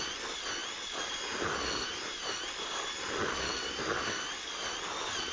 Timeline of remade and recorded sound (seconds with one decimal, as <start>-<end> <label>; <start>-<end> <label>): 0.0-5.3 recorded